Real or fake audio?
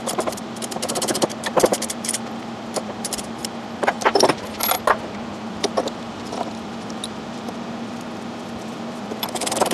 fake